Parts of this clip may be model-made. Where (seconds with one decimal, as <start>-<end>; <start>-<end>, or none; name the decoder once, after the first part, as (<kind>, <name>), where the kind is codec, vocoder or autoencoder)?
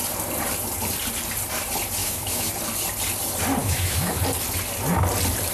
2.0-2.5 (autoencoder, DAC-VAE); 3.6-4.2